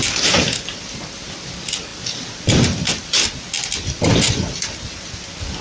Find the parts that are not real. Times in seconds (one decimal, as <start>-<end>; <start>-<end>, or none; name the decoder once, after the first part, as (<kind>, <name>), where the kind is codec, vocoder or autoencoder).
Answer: none